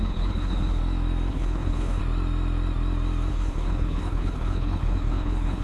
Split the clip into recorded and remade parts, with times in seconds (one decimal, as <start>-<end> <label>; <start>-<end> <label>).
0.0-0.8 remade; 0.8-1.3 recorded; 1.3-2.0 remade; 2.0-3.3 recorded; 3.3-5.6 remade